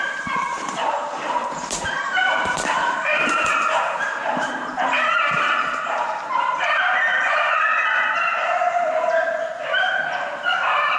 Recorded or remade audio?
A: remade